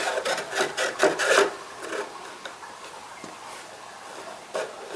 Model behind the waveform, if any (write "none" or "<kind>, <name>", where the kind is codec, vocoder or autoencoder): none